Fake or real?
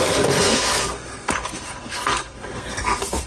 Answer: fake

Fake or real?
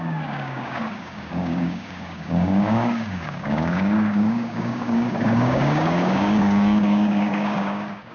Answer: fake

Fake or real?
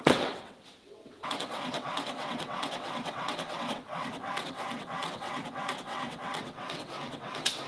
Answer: fake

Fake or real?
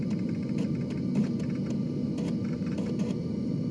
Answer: fake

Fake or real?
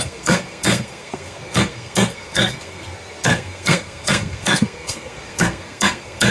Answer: fake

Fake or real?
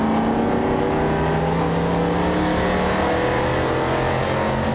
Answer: real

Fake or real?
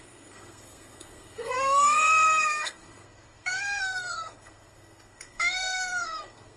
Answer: fake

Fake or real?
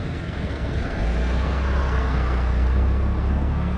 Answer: fake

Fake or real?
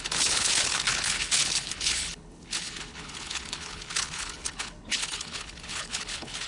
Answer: fake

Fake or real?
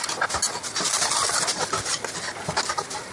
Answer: real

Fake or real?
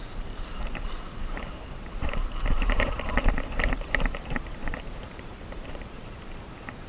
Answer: fake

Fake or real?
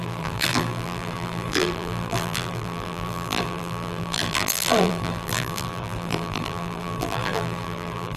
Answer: fake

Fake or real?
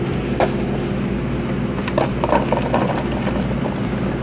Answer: real